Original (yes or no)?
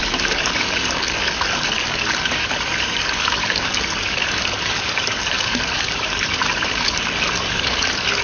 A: no